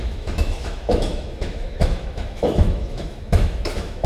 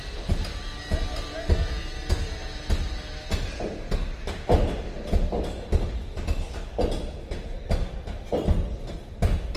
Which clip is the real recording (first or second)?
second